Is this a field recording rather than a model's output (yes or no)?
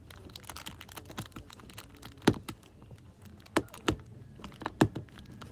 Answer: yes